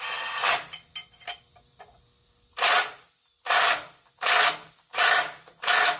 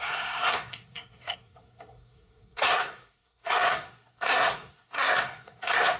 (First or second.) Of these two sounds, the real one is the first